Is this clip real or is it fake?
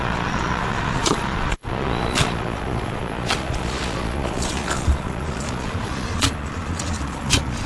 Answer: fake